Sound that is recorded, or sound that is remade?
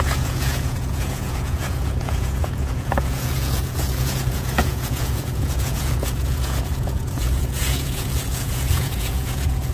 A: remade